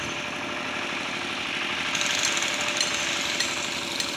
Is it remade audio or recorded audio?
recorded